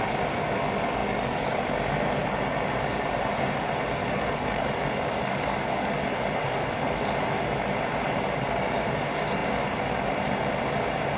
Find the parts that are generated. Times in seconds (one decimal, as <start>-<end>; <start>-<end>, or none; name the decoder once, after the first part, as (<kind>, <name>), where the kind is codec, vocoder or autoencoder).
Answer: 4.0-5.9 (codec, DAC)